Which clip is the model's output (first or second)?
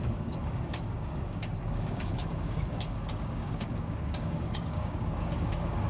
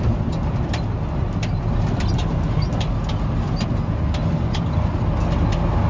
first